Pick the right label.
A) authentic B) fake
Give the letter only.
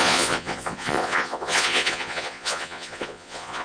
B